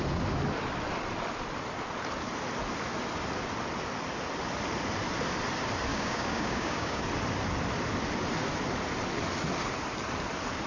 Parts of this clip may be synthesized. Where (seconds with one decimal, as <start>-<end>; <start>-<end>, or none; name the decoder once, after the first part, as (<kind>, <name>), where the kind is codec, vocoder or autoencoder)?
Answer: 5.9-7.0 (codec, DAC)